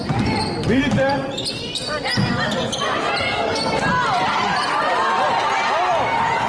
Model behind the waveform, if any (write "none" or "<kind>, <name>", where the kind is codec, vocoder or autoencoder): none